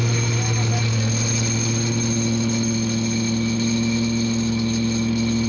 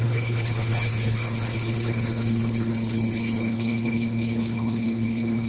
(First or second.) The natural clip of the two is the first